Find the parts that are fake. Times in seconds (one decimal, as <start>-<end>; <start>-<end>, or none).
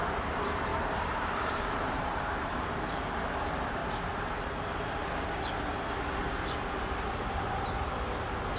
0.7-3.2